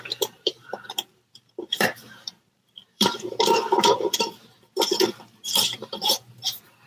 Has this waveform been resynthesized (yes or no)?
yes